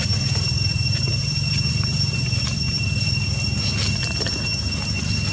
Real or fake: real